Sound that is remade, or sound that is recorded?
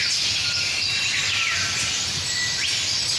recorded